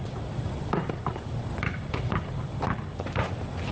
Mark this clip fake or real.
real